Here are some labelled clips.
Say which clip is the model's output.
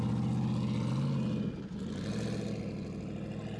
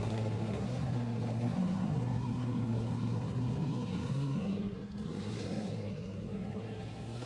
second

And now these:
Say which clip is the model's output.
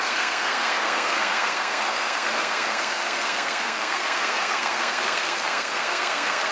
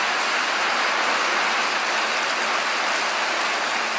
first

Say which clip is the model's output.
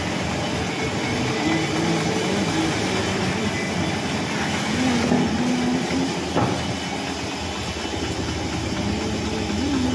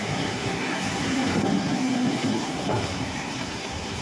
second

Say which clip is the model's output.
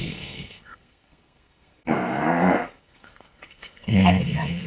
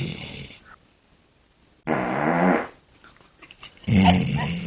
first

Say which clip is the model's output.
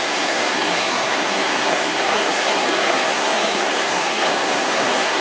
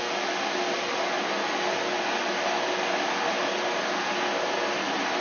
first